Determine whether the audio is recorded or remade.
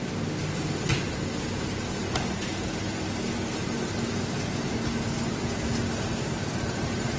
recorded